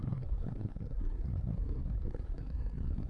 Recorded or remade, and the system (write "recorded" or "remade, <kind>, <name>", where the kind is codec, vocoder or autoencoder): remade, codec, SNAC